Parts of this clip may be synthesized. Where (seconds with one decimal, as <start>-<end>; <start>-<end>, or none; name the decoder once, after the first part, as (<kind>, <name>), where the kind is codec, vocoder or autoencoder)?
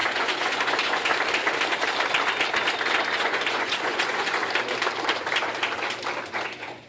0.0-1.1 (vocoder, Vocos); 3.2-4.4; 6.3-6.9